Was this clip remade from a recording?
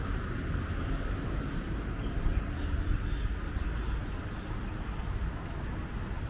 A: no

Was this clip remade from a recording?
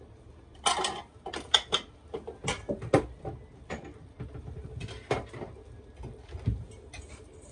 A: no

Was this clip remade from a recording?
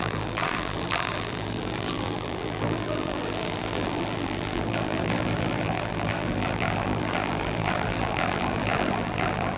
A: yes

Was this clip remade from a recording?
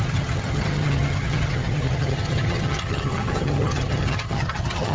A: yes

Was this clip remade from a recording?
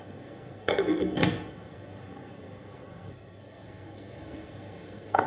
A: yes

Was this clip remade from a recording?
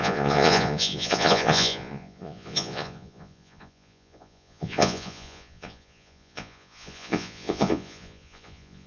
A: yes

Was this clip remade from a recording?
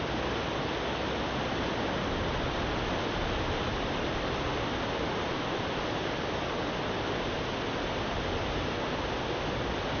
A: no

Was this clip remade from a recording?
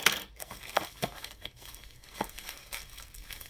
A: yes